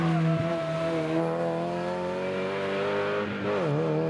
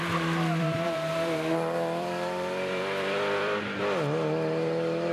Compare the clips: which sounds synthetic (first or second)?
second